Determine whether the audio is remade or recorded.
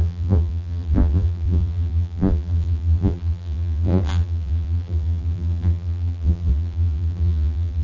remade